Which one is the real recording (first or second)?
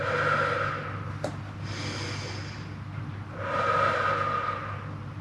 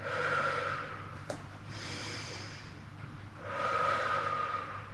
first